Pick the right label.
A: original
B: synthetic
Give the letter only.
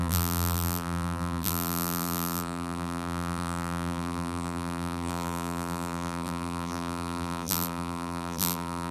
B